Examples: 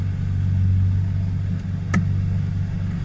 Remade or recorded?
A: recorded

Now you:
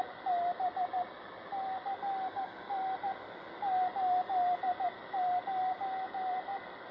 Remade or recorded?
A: recorded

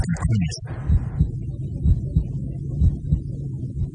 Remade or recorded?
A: recorded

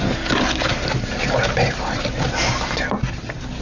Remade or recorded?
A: recorded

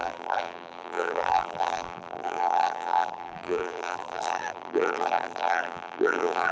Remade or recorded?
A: remade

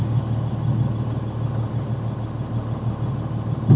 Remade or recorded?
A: recorded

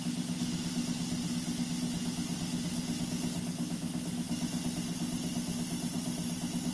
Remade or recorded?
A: recorded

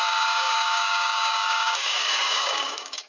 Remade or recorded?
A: remade